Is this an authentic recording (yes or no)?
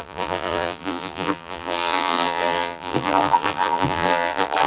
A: no